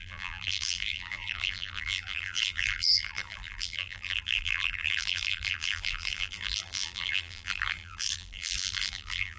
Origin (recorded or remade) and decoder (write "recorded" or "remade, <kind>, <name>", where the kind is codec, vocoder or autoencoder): remade, vocoder, BigVGAN v2